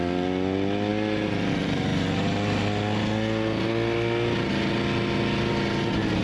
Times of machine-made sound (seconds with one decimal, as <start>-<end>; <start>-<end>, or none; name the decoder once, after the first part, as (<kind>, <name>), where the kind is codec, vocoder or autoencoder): none